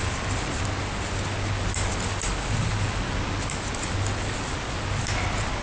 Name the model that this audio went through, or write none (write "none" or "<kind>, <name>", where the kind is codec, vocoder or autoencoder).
none